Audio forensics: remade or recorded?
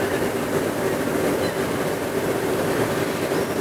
recorded